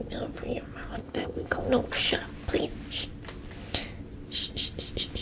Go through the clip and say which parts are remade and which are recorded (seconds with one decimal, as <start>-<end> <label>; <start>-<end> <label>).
0.0-1.0 recorded; 1.0-1.6 remade; 1.6-5.2 recorded